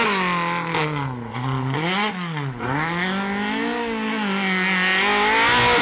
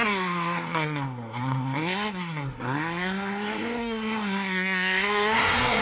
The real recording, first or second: first